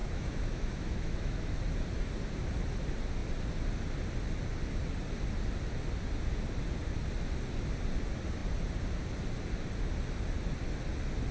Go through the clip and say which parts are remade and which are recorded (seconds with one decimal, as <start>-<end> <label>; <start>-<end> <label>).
0.0-1.6 remade; 1.6-11.3 recorded